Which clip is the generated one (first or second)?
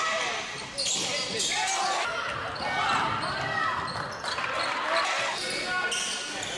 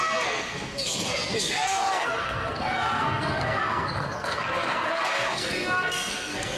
second